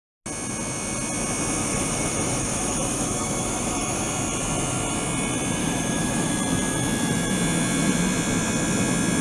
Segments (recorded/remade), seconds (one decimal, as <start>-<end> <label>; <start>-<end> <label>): 0.0-1.6 recorded; 1.6-4.0 remade; 4.0-5.6 recorded; 5.6-6.3 remade; 6.3-9.2 recorded